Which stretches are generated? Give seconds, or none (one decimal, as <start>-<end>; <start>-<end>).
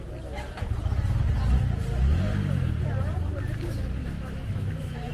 4.0-5.1